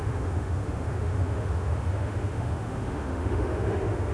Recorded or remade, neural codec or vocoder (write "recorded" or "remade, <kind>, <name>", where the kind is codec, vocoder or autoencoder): remade, autoencoder, DAC-VAE